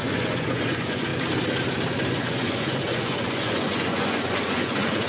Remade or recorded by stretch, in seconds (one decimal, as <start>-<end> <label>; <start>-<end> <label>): 0.0-1.1 remade; 1.1-2.1 recorded; 2.1-5.1 remade